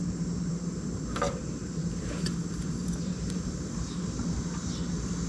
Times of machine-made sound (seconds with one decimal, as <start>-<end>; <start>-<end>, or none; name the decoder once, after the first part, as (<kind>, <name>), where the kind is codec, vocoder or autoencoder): 0.0-0.7 (vocoder, BigVGAN v2); 1.4-4.6